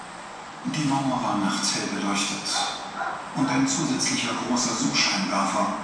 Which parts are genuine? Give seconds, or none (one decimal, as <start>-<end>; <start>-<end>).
0.6-2.4; 2.8-3.8; 5.1-5.8